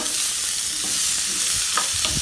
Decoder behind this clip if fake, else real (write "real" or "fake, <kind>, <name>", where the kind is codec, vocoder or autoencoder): real